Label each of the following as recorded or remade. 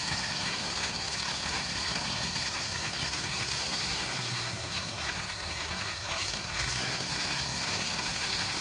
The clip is remade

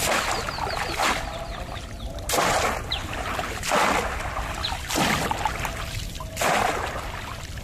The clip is recorded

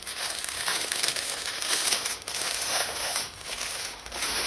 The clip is remade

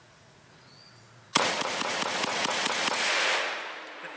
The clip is remade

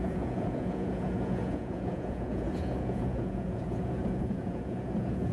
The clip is remade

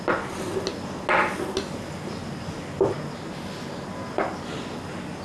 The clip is recorded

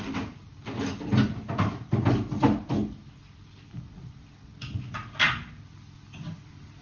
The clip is recorded